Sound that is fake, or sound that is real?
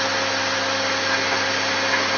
fake